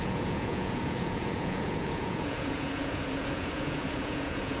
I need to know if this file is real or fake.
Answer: fake